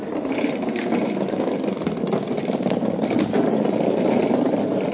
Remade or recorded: recorded